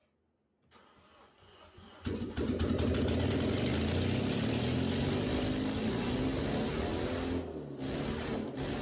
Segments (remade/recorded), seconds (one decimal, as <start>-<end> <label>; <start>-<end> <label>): 0.0-1.2 recorded; 1.2-2.4 remade; 2.4-8.8 recorded